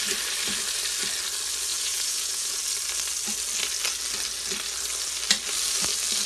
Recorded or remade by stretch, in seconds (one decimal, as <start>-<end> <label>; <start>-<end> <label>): 0.0-1.7 recorded; 1.7-2.6 remade; 2.6-6.3 recorded